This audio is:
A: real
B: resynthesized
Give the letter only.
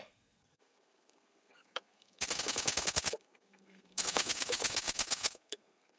B